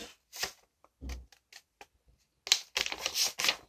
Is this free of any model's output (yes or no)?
yes